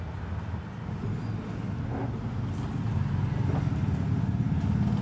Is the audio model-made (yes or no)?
no